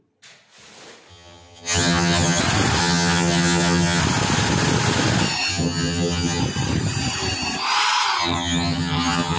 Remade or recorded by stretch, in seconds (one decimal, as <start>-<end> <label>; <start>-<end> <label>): 0.0-1.1 recorded; 1.1-2.4 remade; 2.4-2.8 recorded; 2.8-4.0 remade; 4.0-5.5 recorded; 5.5-6.4 remade; 6.4-8.2 recorded; 8.2-9.4 remade